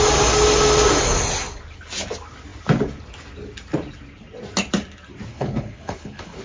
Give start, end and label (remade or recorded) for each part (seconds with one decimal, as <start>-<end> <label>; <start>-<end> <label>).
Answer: 0.0-5.3 recorded; 5.3-6.4 remade